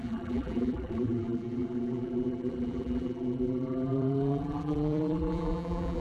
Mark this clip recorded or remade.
remade